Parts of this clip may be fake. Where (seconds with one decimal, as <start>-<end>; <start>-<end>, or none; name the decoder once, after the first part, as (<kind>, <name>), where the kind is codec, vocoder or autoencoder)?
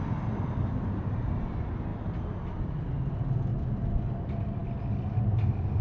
3.5-4.1 (vocoder, BigVGAN v2)